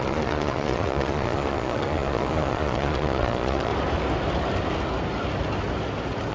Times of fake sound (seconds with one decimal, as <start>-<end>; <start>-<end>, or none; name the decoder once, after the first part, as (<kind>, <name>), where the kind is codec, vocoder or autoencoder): 0.0-3.7 (vocoder, Vocos)